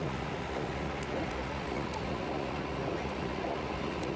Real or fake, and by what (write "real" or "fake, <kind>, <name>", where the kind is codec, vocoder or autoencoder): fake, vocoder, Vocos